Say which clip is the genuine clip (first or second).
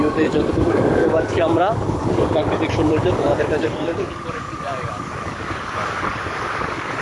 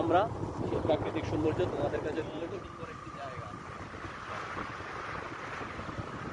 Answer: second